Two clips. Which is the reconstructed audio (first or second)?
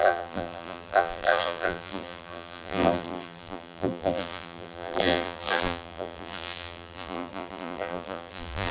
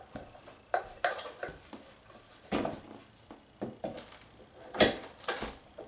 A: first